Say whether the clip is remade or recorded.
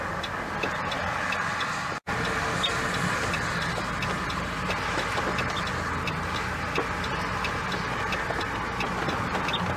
recorded